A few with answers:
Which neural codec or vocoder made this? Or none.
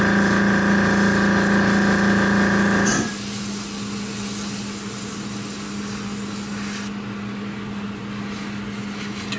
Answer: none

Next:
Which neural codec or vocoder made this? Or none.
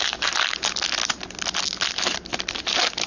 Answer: none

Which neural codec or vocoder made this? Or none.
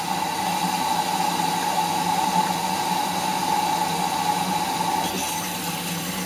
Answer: none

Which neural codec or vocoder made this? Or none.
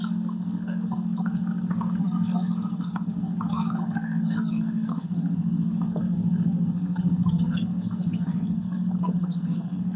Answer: codec, SNAC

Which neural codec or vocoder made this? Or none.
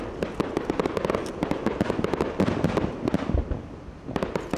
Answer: none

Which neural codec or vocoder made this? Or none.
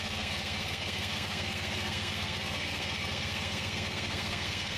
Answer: codec, SNAC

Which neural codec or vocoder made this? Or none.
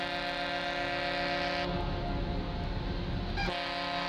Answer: none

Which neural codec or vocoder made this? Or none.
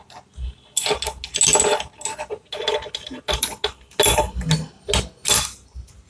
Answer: none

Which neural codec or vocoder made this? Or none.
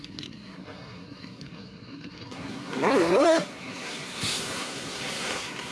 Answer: codec, SNAC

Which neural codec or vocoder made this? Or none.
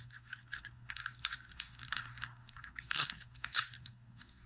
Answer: codec, SNAC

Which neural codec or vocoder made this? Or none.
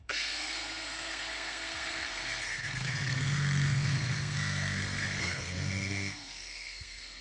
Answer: codec, SNAC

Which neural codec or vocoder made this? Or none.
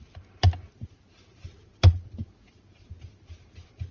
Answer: none